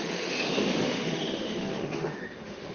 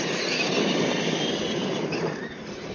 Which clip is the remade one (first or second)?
first